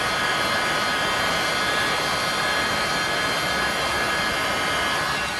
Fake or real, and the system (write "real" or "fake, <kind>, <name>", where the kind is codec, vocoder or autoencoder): real